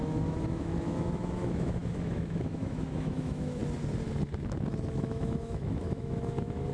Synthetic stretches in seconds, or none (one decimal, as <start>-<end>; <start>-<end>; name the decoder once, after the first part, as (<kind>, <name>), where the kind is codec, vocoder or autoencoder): 0.0-3.6 (autoencoder, DAC-VAE); 4.9-6.7